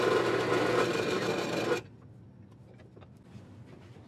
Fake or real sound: real